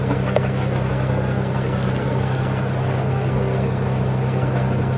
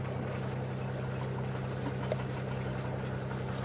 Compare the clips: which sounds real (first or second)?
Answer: second